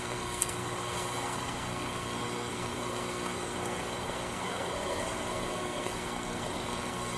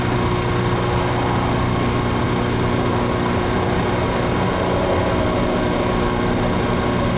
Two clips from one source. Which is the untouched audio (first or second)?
second